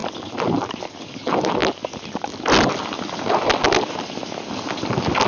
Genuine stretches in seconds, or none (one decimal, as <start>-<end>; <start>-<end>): 0.0-5.3